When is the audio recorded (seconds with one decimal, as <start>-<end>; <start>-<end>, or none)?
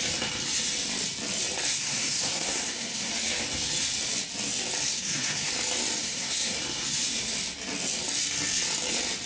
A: 0.0-1.7; 3.1-4.9; 5.5-6.0; 6.6-9.3